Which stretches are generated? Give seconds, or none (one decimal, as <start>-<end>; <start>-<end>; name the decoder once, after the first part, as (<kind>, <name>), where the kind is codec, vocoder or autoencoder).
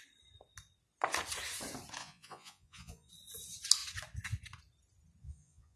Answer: 2.0-3.1 (vocoder, Vocos); 5.2-5.8